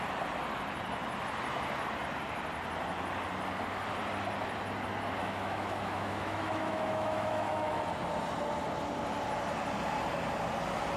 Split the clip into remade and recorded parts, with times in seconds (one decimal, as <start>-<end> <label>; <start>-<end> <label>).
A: 0.0-5.2 recorded; 5.2-7.8 remade; 7.8-11.0 recorded